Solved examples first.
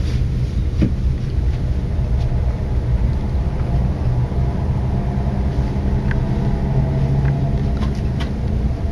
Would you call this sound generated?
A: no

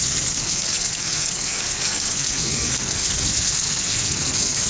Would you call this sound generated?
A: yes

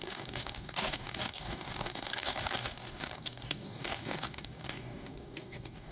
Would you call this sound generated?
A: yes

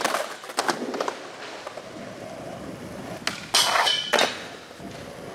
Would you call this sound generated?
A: no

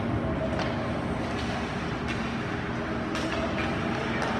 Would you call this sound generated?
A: no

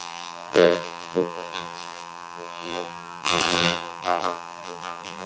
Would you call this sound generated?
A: yes